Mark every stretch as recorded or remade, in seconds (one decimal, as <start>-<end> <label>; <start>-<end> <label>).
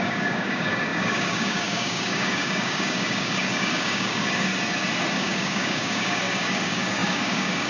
0.0-4.5 remade; 4.5-5.1 recorded; 5.1-7.7 remade